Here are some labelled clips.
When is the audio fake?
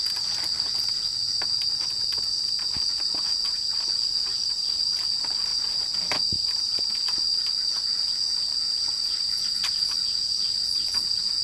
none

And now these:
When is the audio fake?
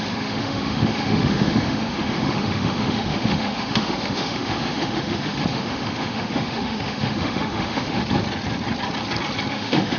0.0-8.0 (autoencoder, DAC-VAE); 9.5-10.0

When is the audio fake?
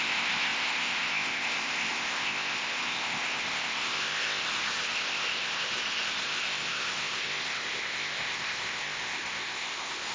0.0-10.1 (codec, ZipCodec)